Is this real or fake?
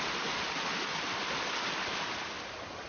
real